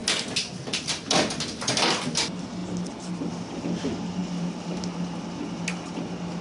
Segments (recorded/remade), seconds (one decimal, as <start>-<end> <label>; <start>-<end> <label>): 0.0-6.4 recorded